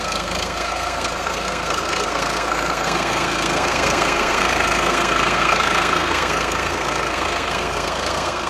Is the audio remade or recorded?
remade